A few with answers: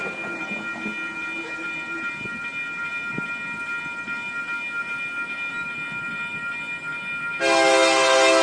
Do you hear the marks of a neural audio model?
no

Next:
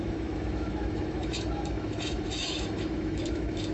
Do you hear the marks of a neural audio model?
yes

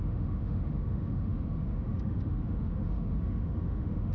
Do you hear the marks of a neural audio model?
yes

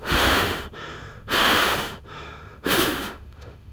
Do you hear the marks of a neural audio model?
yes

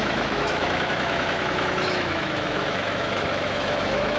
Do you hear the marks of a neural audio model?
yes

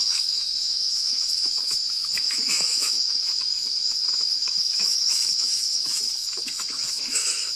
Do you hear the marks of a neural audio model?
yes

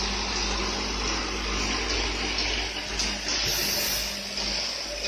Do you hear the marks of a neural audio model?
no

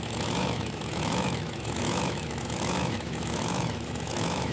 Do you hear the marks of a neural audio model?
yes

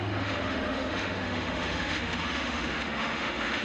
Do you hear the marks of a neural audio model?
yes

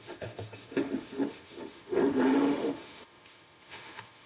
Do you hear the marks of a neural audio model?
yes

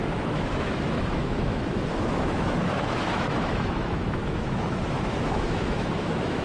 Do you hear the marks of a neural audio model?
yes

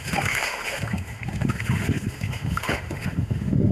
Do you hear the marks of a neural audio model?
yes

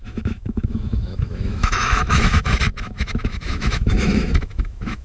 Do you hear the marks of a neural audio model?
yes